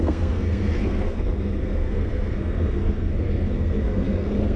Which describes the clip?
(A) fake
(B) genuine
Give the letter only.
A